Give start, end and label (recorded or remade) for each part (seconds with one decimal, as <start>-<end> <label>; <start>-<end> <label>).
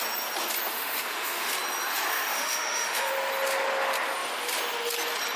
0.0-0.7 recorded; 0.7-1.5 remade; 1.5-1.9 recorded; 1.9-3.1 remade; 3.1-5.4 recorded